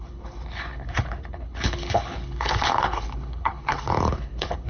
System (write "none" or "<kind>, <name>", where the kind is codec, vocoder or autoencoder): codec, HILCodec